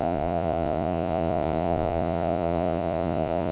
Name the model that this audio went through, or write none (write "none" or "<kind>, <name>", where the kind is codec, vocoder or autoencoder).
vocoder, Vocos